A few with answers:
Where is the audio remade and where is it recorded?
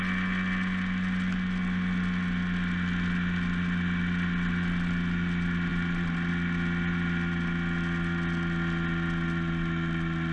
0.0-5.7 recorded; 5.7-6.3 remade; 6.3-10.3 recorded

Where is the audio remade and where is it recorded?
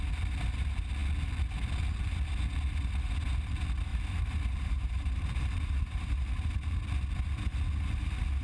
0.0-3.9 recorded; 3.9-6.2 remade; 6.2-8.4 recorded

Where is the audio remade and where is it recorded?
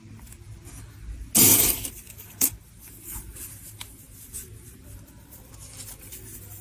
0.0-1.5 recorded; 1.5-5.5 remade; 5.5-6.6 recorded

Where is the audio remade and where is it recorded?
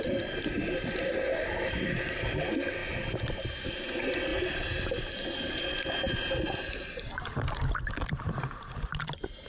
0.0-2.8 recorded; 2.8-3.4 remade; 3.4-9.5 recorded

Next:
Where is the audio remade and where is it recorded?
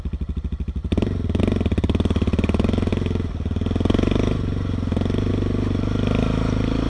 0.0-0.8 recorded; 0.8-1.4 remade; 1.4-6.9 recorded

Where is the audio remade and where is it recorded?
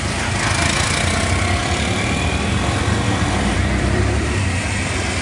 0.0-1.6 recorded; 1.6-4.7 remade; 4.7-5.2 recorded